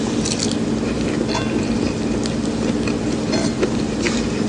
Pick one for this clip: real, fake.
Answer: real